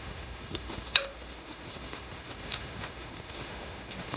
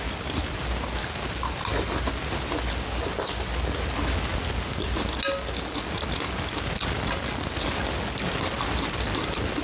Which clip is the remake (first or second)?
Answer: first